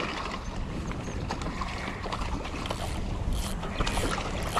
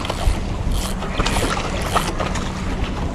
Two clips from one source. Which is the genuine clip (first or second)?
second